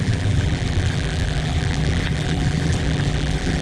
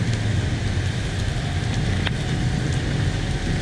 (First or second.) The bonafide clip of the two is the second